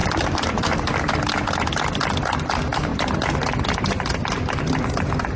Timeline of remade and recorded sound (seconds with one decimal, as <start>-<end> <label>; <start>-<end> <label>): 0.0-1.1 remade; 1.1-2.9 recorded; 2.9-3.9 remade; 3.9-5.4 recorded